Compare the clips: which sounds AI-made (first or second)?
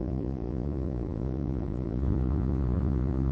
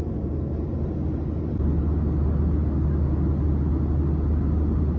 first